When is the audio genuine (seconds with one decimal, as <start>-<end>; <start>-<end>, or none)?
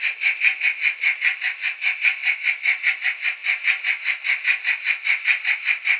0.0-6.0